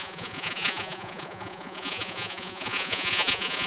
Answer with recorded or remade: remade